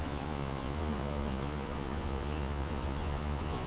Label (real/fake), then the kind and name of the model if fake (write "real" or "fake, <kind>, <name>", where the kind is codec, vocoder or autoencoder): fake, vocoder, Vocos